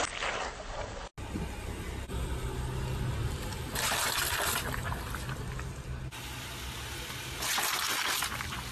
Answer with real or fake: real